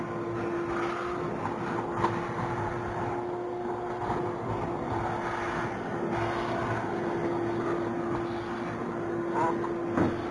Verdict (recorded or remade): recorded